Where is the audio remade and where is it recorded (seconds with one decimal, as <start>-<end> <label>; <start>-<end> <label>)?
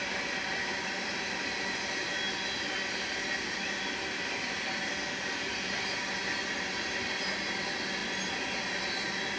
0.0-9.4 recorded